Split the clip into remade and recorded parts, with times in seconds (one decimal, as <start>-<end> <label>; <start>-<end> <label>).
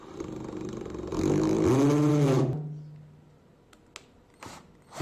0.0-5.0 recorded